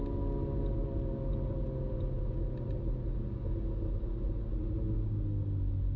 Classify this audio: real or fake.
real